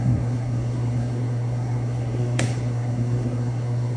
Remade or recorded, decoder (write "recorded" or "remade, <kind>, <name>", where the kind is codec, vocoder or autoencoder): remade, codec, SNAC